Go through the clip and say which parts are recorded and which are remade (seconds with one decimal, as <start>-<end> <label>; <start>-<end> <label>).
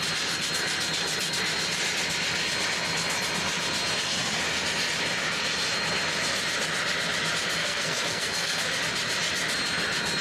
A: 0.0-7.6 recorded; 7.6-8.8 remade; 8.8-10.2 recorded